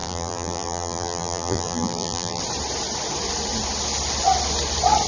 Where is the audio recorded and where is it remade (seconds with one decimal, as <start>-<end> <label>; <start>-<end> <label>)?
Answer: 0.0-2.4 remade; 2.4-5.1 recorded